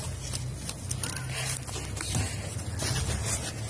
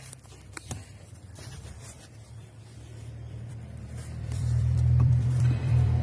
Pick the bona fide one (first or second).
first